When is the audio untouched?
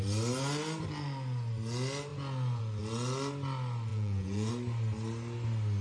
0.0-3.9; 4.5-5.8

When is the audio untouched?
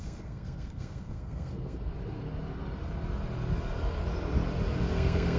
1.9-4.8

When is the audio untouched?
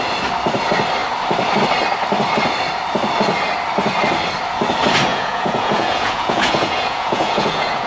0.0-5.1